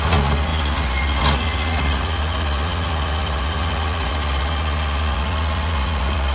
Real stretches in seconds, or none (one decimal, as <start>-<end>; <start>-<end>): none

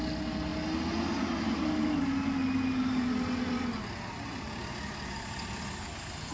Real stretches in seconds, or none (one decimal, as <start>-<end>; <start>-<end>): 0.0-6.3

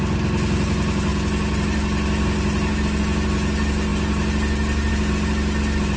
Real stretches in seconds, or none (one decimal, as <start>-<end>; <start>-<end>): 0.0-6.0

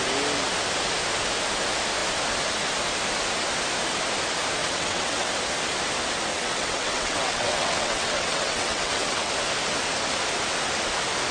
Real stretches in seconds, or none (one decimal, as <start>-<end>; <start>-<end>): 0.0-4.6; 5.3-6.3; 9.3-11.3

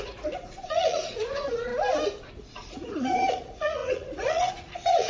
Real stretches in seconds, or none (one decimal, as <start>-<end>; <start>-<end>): 1.7-2.3

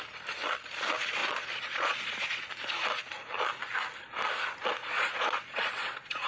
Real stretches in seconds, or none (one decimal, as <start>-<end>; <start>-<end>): 0.0-1.2; 2.5-4.8

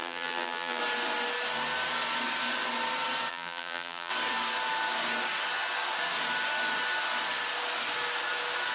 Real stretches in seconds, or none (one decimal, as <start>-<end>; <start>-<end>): 0.8-3.3; 4.1-8.7

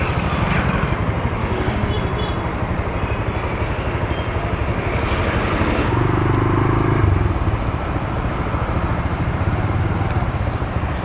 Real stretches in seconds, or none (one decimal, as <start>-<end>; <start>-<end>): 0.0-1.4; 1.9-11.0